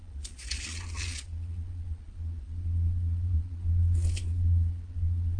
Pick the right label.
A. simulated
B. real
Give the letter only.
A